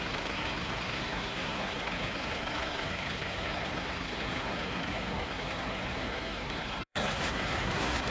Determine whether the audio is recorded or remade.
remade